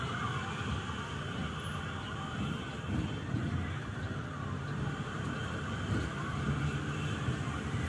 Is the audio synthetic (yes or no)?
yes